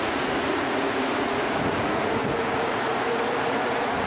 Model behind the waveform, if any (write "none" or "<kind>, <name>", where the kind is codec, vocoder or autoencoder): vocoder, Vocos